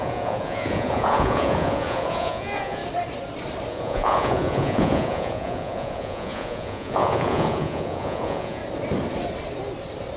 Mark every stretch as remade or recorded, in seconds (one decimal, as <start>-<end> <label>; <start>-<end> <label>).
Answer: 0.0-2.8 remade; 2.8-3.7 recorded; 3.7-8.6 remade; 8.6-10.2 recorded